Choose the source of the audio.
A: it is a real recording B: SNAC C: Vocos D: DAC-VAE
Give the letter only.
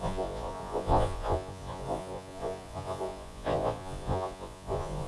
C